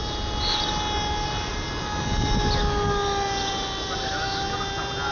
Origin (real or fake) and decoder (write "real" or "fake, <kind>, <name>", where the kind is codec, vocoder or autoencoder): real